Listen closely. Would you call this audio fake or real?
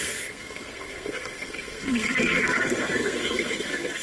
fake